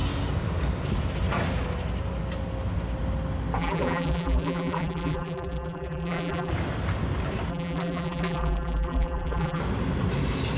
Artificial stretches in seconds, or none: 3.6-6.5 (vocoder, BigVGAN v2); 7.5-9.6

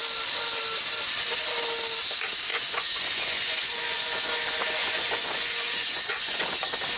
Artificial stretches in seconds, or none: 2.5-4.3 (vocoder, Vocos); 4.8-6.5